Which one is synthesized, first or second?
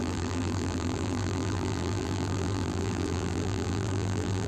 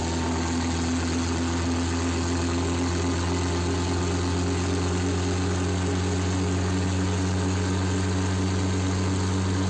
first